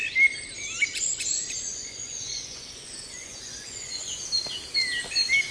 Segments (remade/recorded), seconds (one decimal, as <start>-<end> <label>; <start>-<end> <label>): 0.0-0.9 recorded; 0.9-4.2 remade; 4.2-5.5 recorded